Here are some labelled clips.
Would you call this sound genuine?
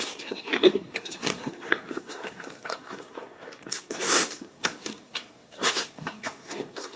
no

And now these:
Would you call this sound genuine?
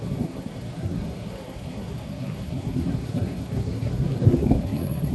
no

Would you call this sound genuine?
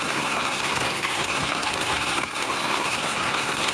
no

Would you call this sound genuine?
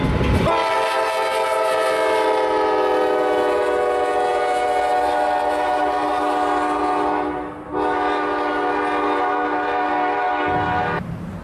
yes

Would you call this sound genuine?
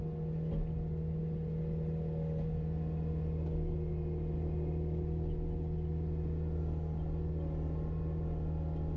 yes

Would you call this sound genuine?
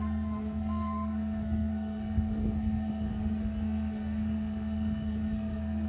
no